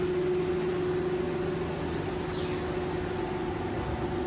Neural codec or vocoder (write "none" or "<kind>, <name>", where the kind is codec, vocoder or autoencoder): none